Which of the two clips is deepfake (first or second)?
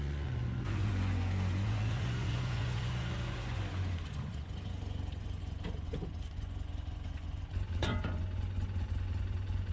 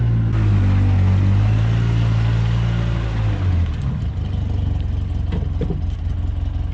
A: first